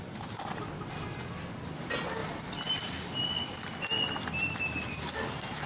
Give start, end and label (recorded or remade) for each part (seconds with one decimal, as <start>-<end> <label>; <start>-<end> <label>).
0.0-5.7 recorded